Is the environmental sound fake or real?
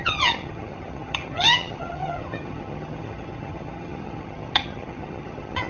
fake